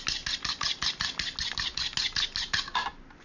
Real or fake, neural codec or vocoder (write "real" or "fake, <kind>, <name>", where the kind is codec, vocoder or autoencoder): real